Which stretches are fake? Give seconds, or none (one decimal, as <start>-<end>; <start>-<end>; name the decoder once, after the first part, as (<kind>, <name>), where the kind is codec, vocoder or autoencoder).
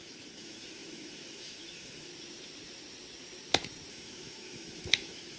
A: 0.0-2.1 (autoencoder, DAC-VAE); 3.9-5.4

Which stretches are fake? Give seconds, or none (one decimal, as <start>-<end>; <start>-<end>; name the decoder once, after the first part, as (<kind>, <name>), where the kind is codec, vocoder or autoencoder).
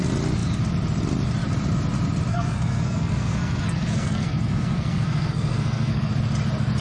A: 2.3-6.1 (codec, SNAC)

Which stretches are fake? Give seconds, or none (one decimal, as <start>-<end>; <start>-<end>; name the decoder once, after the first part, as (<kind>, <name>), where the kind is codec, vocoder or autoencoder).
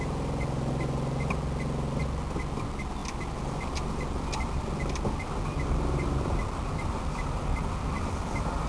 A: none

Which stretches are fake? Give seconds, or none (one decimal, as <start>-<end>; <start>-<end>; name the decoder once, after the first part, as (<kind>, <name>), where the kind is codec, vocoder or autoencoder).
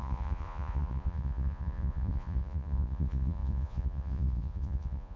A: 0.0-5.2 (vocoder, Vocos)